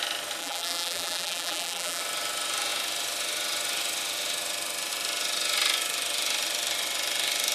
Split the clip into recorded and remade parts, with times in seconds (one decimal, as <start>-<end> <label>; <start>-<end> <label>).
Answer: 0.0-0.4 recorded; 0.4-2.0 remade; 2.0-7.5 recorded